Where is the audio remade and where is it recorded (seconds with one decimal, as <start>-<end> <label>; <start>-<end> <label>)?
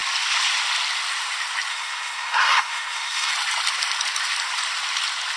0.0-1.7 recorded; 1.7-3.3 remade; 3.3-5.4 recorded